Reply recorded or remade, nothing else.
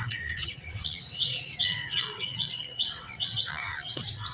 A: remade